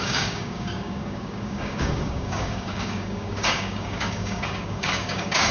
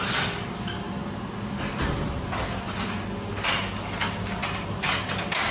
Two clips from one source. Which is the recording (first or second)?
second